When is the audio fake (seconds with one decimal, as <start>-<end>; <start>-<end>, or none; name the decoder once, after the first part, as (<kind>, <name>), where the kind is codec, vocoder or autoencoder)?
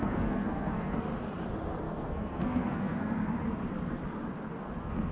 0.0-1.1 (codec, SNAC); 1.8-3.2; 4.6-5.1